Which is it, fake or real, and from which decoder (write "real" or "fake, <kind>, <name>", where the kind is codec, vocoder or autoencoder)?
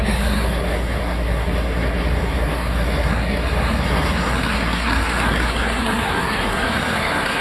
fake, codec, SNAC